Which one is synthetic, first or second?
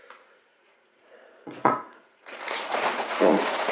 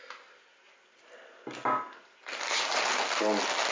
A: first